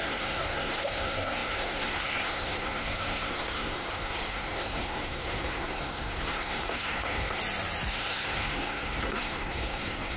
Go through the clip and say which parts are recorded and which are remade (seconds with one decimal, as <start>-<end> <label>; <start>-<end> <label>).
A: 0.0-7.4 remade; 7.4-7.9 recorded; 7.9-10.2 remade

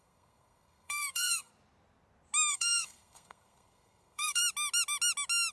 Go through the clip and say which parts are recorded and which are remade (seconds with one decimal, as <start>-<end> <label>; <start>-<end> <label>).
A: 0.0-1.5 remade; 1.5-2.5 recorded; 2.5-4.4 remade; 4.4-5.5 recorded

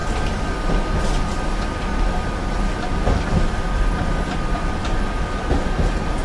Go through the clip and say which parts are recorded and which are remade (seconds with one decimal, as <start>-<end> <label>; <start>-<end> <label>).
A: 0.0-6.2 recorded